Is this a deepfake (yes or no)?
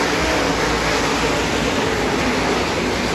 no